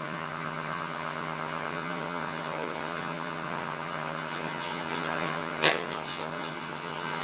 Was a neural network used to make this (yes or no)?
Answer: yes